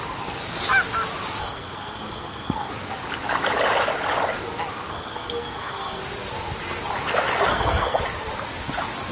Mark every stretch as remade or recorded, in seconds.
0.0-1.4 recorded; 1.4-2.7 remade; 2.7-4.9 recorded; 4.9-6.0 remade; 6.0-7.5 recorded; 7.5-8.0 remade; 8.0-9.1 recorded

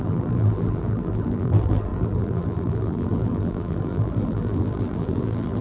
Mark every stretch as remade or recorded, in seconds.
0.0-5.6 remade

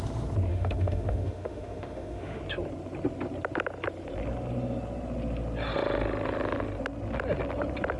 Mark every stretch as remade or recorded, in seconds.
0.0-0.5 recorded; 0.5-2.4 remade; 2.4-8.0 recorded